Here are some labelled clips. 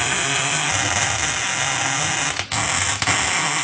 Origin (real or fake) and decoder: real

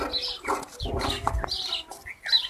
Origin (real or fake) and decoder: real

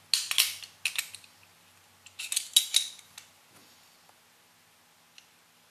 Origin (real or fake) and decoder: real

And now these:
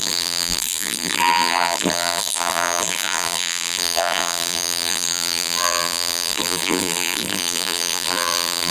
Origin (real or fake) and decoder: fake, vocoder, BigVGAN v2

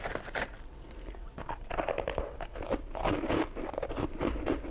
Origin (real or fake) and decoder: real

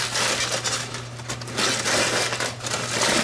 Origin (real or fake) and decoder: real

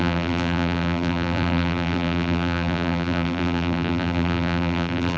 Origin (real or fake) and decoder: fake, vocoder, BigVGAN v2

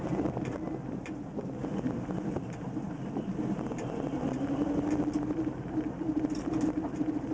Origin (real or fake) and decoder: fake, vocoder, BigVGAN v2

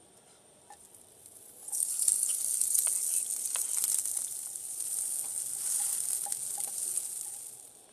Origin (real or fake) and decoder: real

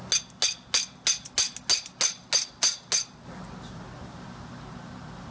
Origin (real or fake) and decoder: real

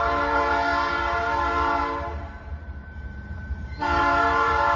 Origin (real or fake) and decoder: fake, vocoder, BigVGAN v2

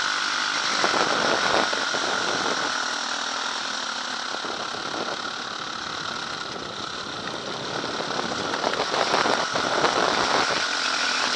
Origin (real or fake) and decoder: real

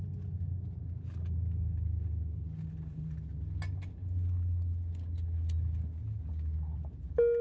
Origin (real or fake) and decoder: real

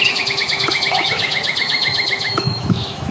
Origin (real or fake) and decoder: fake, autoencoder, DAC-VAE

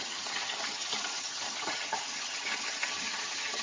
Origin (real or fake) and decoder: fake, vocoder, HiFi-GAN